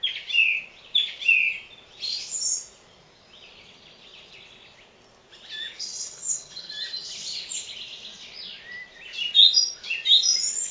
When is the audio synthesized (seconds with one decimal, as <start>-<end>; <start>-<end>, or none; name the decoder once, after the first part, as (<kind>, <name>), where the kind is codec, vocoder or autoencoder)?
5.7-6.7 (codec, HILCodec)